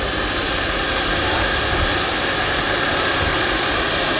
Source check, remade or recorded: recorded